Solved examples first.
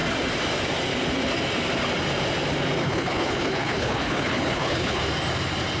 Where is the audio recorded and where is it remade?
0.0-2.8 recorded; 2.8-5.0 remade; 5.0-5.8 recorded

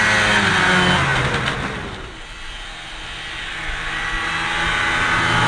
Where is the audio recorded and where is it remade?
0.0-5.5 recorded